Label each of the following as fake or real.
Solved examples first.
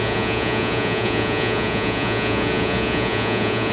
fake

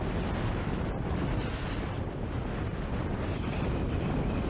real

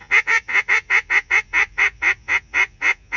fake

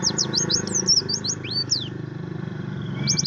real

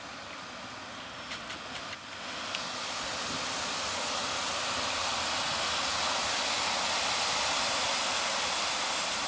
real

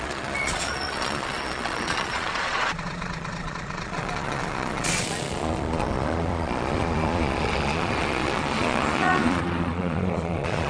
fake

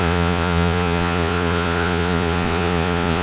fake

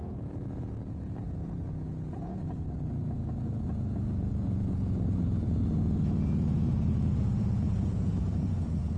fake